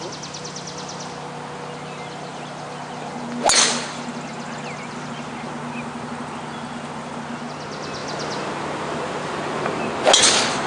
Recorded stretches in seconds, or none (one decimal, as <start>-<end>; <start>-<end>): 0.0-10.7